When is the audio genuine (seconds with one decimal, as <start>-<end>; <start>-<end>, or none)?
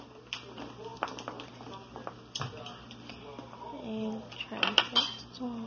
none